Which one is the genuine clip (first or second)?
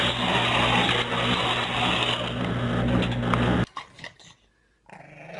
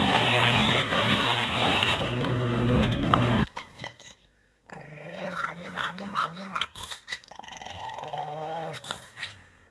first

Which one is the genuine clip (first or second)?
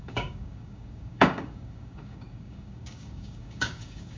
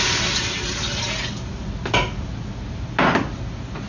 second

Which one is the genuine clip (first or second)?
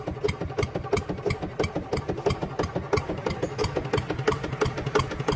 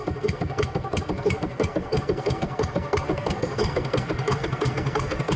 first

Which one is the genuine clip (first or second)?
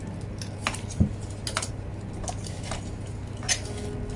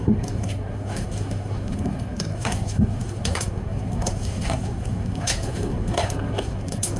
first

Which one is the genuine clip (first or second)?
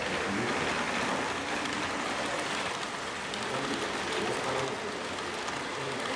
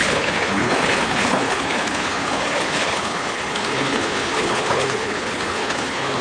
first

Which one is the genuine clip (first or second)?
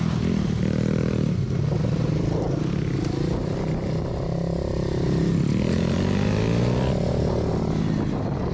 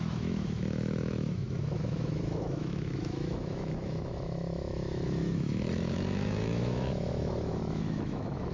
first